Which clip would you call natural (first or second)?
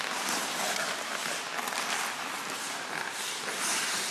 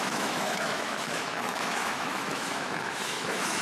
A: first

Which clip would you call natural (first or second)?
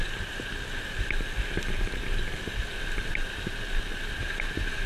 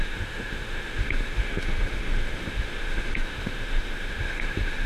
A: first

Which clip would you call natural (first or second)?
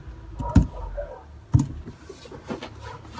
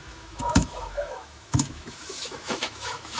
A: first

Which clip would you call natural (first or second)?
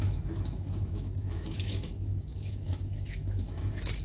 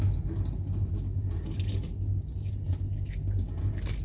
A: second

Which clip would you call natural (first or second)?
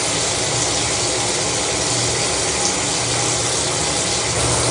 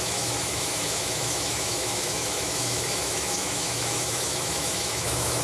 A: first